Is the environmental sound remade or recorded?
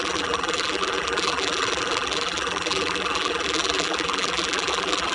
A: remade